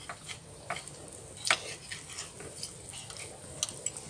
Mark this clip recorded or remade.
recorded